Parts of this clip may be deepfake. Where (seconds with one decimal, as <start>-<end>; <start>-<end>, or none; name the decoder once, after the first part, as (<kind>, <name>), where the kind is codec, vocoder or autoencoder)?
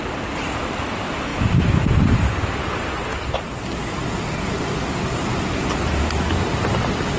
1.3-2.2 (vocoder, BigVGAN v2); 3.1-5.9